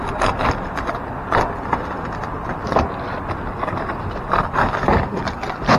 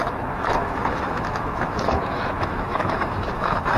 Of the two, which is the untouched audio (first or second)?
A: first